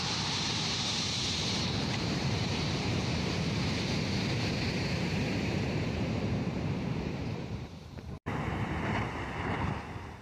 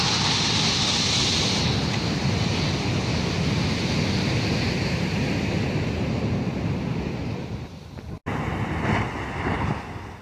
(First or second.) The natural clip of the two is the second